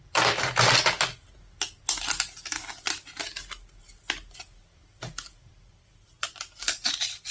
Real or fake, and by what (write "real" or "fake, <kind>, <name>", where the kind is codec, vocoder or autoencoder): real